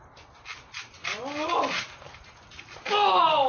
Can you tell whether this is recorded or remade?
recorded